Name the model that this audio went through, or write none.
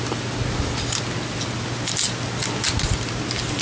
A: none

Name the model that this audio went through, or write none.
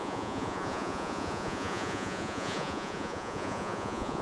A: vocoder, Vocos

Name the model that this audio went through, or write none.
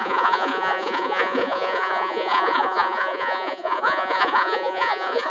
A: vocoder, Vocos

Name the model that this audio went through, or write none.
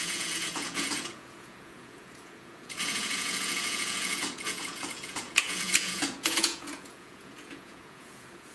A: vocoder, Vocos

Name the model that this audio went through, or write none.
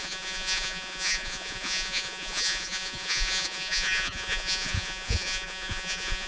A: vocoder, Vocos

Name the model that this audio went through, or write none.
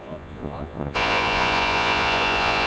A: vocoder, Vocos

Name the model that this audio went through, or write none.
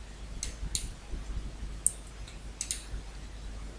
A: none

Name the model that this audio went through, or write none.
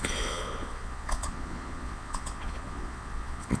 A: vocoder, Vocos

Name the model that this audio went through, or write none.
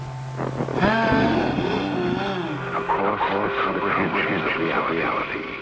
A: none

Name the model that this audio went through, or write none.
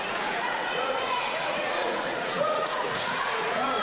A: vocoder, Vocos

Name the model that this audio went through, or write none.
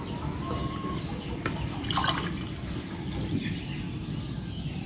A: none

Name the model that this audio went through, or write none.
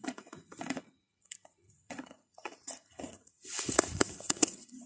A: vocoder, Vocos